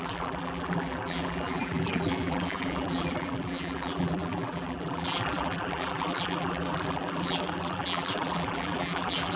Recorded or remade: remade